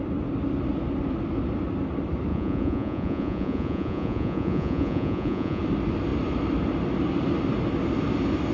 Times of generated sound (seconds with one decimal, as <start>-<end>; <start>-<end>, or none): 2.3-5.6